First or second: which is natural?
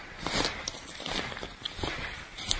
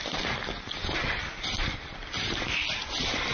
second